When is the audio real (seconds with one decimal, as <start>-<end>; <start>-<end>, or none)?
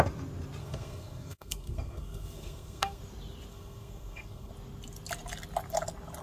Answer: 0.0-0.6; 3.0-3.5; 4.5-6.2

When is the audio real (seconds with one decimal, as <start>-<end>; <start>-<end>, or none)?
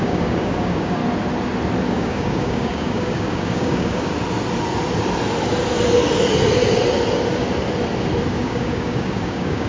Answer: 1.0-1.9; 4.1-8.3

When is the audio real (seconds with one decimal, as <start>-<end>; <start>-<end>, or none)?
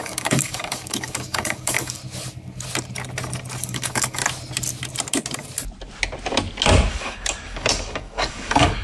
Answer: 2.0-3.6; 4.2-6.9